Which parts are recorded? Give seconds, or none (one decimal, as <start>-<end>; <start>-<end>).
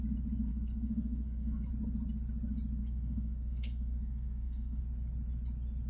0.0-0.5; 1.7-2.8; 4.8-5.9